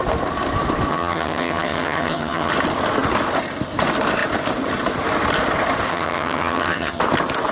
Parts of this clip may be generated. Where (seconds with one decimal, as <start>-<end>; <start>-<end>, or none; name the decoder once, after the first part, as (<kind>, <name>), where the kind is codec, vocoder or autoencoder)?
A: 0.9-2.5 (vocoder, HiFi-GAN); 5.9-7.0